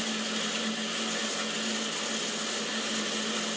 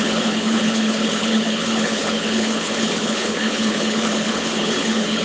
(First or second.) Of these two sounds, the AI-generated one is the second